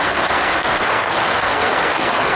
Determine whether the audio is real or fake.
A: fake